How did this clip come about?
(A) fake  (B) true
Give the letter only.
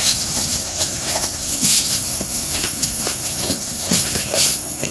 A